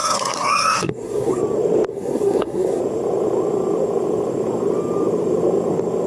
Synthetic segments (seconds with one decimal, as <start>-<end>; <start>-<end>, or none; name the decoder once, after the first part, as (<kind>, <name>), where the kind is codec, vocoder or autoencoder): 0.0-1.4 (codec, SNAC); 1.9-2.8